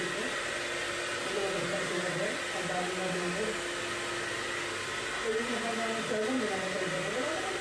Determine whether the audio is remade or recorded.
recorded